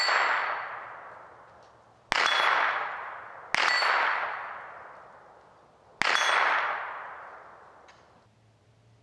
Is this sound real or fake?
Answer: real